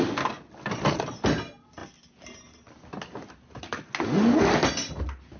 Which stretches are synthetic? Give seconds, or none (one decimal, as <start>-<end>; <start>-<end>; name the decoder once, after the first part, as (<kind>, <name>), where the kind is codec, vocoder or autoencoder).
none